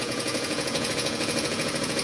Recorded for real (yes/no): no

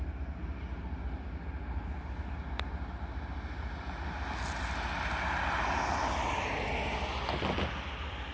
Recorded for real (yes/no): yes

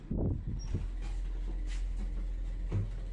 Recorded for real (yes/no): yes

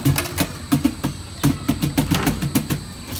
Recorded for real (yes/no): yes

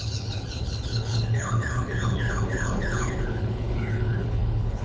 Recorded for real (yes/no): no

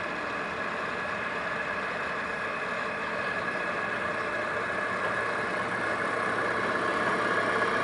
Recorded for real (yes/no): yes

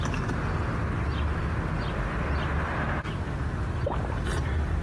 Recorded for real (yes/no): yes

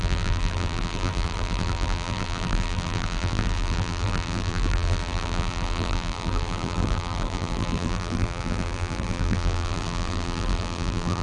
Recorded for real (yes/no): no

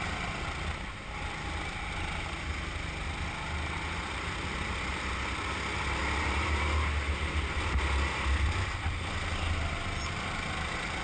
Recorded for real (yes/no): yes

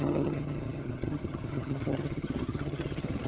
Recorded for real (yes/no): no